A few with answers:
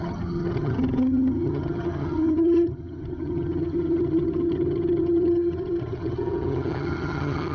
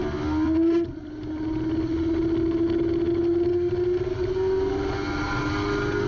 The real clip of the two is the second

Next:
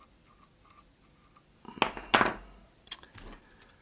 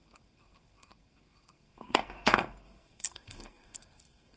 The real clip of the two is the first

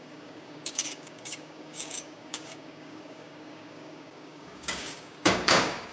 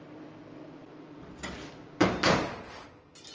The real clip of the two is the second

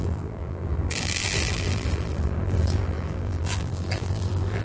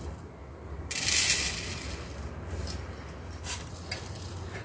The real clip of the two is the second